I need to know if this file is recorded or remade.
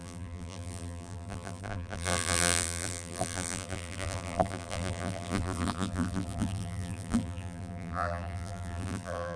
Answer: remade